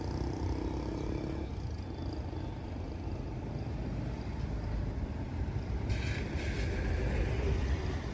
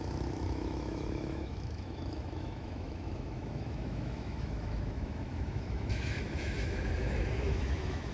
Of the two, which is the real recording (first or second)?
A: first